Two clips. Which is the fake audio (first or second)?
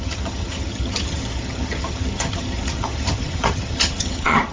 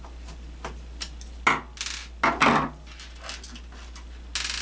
first